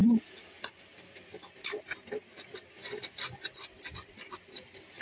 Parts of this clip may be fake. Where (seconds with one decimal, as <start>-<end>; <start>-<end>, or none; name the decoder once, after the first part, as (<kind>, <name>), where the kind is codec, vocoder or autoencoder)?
0.0-0.9 (vocoder, BigVGAN v2); 2.8-3.9